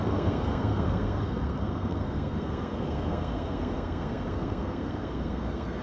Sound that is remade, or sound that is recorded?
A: remade